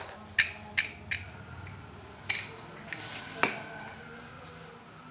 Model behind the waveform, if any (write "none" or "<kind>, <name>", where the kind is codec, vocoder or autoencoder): none